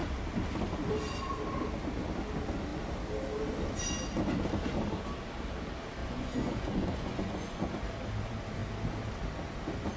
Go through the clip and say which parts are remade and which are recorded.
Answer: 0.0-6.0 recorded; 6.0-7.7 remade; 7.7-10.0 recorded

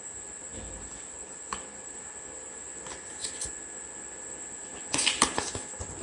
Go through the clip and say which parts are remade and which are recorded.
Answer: 0.0-6.0 recorded

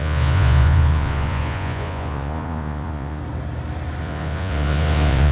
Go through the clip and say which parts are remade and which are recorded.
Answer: 0.0-3.2 remade; 3.2-4.0 recorded; 4.0-5.3 remade

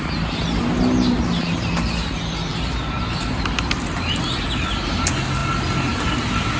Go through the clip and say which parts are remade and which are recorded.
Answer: 0.0-6.6 recorded

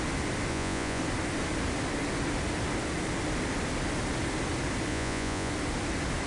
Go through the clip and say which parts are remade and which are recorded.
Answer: 0.0-0.5 recorded; 0.5-1.0 remade; 1.0-4.9 recorded; 4.9-5.5 remade; 5.5-6.3 recorded

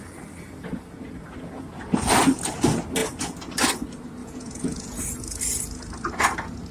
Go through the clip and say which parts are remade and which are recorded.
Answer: 0.0-4.2 recorded; 4.2-5.0 remade; 5.0-6.7 recorded

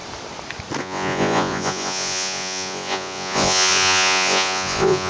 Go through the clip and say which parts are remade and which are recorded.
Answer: 0.0-0.8 recorded; 0.8-5.1 remade

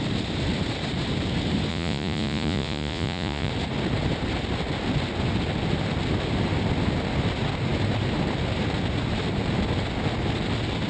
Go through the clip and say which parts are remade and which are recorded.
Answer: 0.0-1.7 recorded; 1.7-3.5 remade; 3.5-10.9 recorded